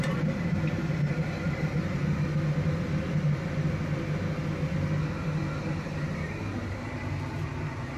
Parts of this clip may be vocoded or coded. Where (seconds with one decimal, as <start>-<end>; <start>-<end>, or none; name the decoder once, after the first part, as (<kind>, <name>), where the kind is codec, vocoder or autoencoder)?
0.0-2.0 (vocoder, BigVGAN v2); 6.7-8.0